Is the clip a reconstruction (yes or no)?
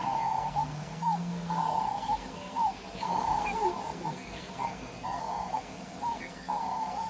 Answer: yes